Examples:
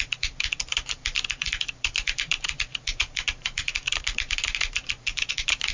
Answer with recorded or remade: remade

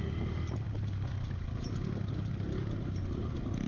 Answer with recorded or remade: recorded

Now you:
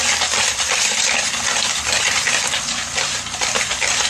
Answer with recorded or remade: recorded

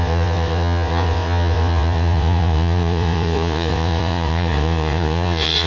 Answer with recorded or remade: remade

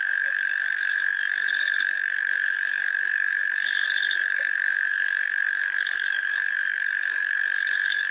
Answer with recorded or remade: remade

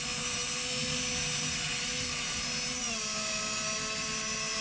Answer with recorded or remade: recorded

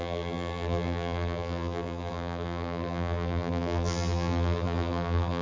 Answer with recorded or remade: remade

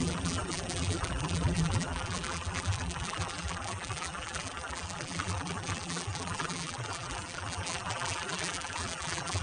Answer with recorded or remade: remade